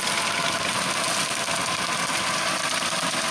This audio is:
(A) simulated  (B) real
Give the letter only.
B